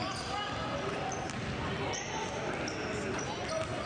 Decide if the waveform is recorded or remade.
recorded